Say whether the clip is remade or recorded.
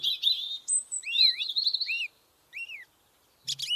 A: recorded